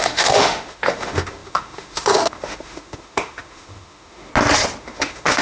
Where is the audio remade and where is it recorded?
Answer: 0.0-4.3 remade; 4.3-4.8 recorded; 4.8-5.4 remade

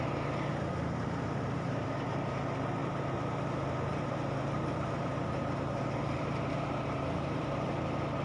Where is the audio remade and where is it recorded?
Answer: 0.0-0.5 recorded; 0.5-2.4 remade; 2.4-2.8 recorded; 2.8-7.5 remade; 7.5-8.2 recorded

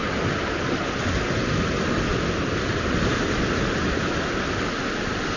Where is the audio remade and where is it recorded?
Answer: 0.0-5.4 recorded

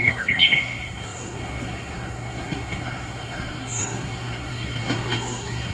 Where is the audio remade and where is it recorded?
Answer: 0.0-5.7 remade

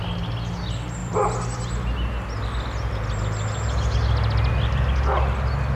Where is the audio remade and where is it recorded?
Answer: 0.0-5.8 recorded

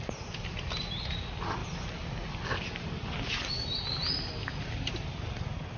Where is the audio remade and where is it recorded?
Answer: 0.0-5.8 recorded

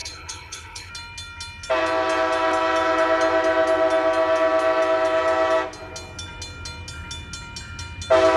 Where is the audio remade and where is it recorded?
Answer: 0.0-0.9 remade; 0.9-8.4 recorded

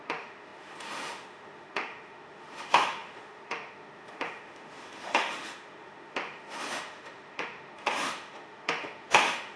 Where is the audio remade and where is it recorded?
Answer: 0.0-9.6 remade